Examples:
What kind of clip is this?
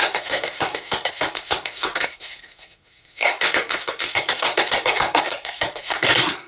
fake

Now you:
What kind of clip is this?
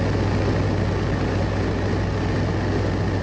real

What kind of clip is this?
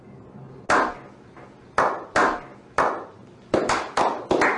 real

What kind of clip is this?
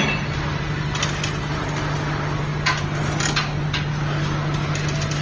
real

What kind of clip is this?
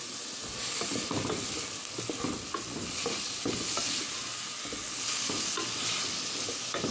real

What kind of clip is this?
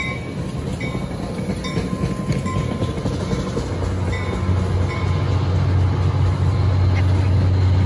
real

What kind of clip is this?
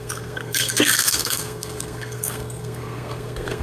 fake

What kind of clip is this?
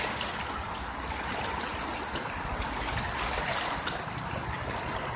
real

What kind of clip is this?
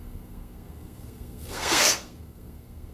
fake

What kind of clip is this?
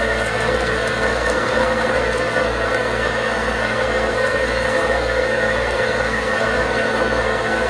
fake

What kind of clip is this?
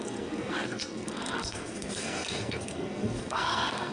fake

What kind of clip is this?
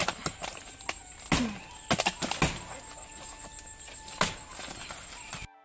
real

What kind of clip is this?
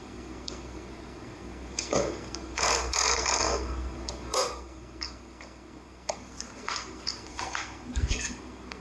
fake